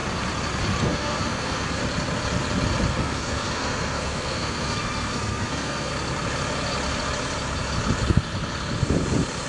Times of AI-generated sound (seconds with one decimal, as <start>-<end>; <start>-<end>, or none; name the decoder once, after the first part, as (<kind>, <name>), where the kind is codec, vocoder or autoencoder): 0.8-1.8 (codec, SNAC); 2.9-5.9